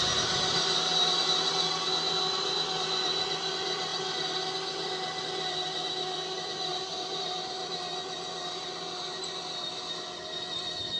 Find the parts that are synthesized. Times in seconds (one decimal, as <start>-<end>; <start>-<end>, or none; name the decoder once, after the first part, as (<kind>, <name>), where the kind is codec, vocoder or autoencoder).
0.0-1.7 (vocoder, BigVGAN v2); 6.7-7.7